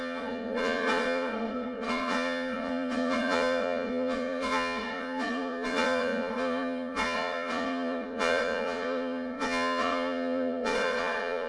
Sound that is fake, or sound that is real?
fake